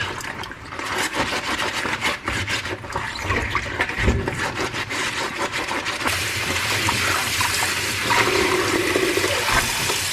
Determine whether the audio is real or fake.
real